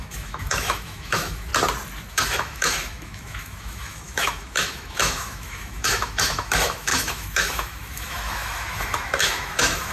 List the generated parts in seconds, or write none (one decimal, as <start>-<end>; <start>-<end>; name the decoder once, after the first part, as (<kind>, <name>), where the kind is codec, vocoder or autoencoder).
0.0-1.5 (autoencoder, DAC-VAE); 2.1-9.9